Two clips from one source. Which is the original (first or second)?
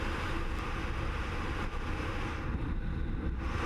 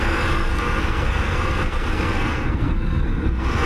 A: first